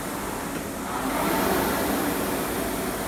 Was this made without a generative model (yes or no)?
yes